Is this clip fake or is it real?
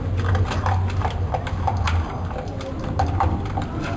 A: real